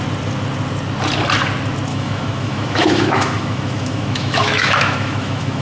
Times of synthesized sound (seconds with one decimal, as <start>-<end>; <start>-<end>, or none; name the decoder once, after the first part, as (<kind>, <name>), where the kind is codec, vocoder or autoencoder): 1.9-5.6 (autoencoder, DAC-VAE)